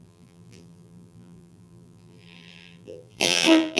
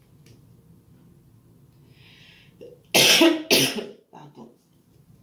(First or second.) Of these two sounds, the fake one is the first